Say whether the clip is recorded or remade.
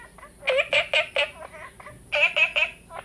recorded